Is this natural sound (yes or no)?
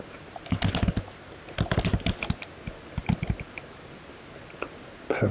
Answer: yes